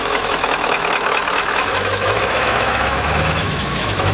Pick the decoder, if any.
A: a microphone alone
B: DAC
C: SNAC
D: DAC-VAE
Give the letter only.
D